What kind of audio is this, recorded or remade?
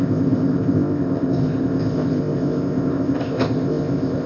remade